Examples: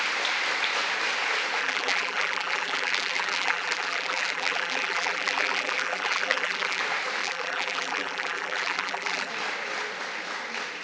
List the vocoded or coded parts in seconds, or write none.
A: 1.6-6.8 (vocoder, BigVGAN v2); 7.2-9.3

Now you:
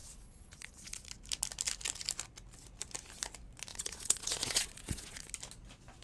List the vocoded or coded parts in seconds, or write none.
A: 0.0-1.1 (vocoder, Vocos); 3.7-5.3

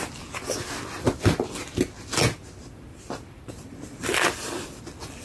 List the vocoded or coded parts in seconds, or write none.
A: 2.9-4.8 (vocoder, BigVGAN v2)